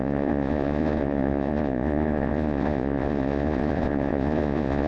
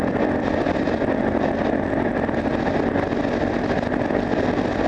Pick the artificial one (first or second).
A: first